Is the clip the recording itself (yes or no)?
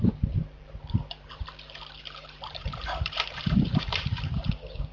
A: no